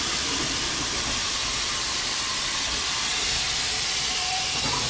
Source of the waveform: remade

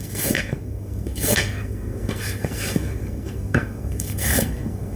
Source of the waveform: remade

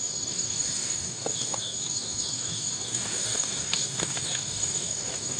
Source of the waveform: remade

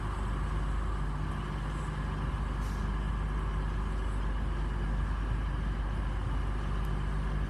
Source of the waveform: recorded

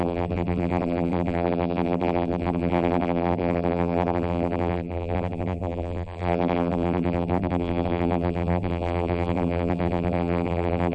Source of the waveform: remade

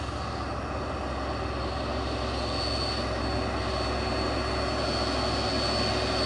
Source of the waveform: recorded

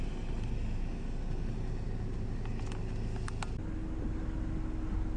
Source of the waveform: recorded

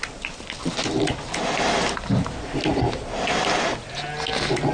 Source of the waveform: recorded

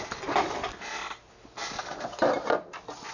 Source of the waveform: recorded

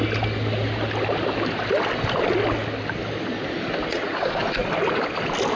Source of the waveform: recorded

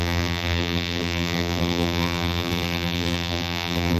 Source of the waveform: remade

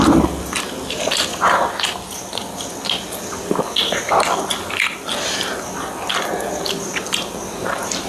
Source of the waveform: recorded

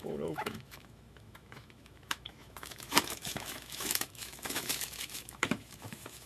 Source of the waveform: remade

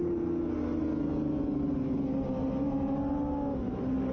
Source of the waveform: recorded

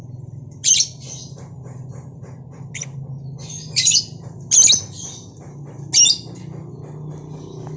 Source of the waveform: recorded